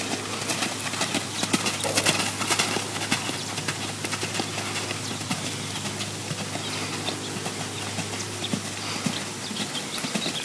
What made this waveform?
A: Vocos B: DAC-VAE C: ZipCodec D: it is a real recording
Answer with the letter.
D